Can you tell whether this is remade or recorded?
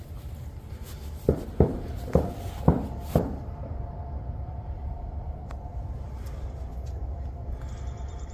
recorded